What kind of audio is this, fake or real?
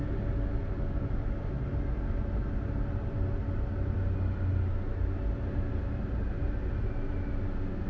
real